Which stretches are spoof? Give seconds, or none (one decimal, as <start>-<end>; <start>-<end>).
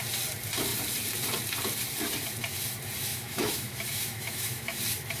3.1-4.8